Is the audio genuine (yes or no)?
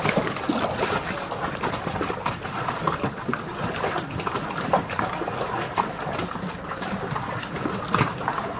yes